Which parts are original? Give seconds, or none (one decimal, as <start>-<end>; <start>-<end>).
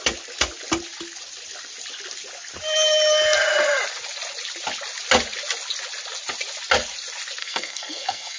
0.0-7.4